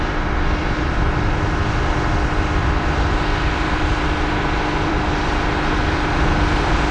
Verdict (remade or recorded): recorded